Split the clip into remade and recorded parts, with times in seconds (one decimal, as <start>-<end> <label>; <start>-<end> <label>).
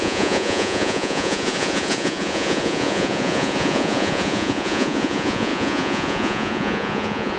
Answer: 0.0-7.4 remade